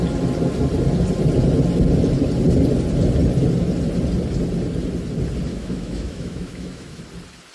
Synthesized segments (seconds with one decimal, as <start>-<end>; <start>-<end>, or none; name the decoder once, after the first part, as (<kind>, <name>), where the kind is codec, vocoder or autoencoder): 5.5-7.0 (autoencoder, DAC-VAE)